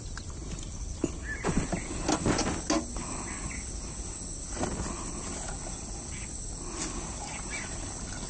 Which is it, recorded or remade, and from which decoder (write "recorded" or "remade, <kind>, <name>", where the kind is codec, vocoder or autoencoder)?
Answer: recorded